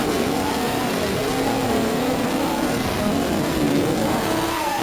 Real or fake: fake